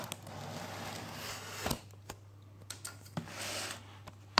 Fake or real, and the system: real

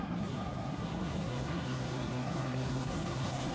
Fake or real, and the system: fake, codec, SNAC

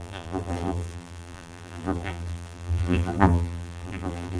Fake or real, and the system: fake, vocoder, BigVGAN v2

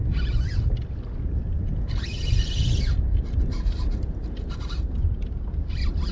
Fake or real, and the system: real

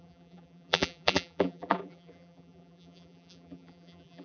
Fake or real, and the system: fake, vocoder, BigVGAN v2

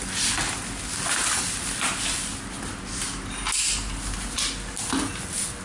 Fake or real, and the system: real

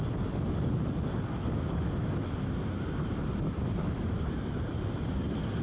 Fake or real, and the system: real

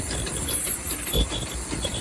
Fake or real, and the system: fake, vocoder, BigVGAN v2